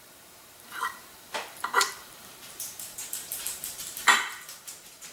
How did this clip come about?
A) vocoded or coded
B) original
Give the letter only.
A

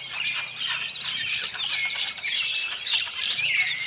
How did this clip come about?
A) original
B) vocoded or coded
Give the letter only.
B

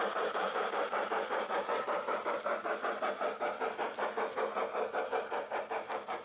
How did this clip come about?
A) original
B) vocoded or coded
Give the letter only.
B